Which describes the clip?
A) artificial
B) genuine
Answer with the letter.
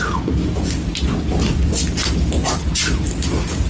B